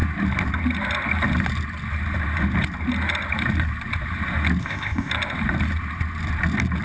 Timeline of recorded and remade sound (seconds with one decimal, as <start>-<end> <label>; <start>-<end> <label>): 0.0-4.6 recorded; 4.6-5.1 remade; 5.1-6.8 recorded